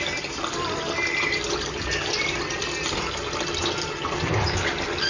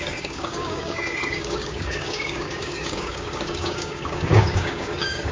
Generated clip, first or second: second